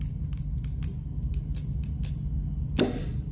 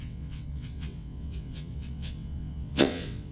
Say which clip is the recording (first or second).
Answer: first